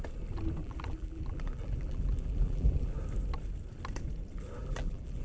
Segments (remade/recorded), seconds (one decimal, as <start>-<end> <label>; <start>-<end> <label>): 0.0-0.6 recorded; 0.6-2.9 remade; 2.9-4.6 recorded; 4.6-5.2 remade